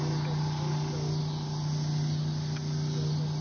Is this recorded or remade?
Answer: recorded